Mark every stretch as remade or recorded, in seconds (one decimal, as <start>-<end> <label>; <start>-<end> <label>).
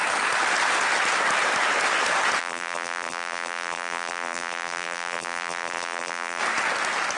0.0-2.4 recorded; 2.4-6.4 remade; 6.4-7.2 recorded